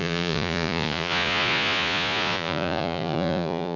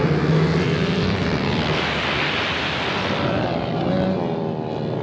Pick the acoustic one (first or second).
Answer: second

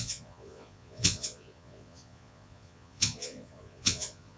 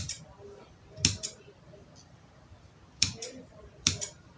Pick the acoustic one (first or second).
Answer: second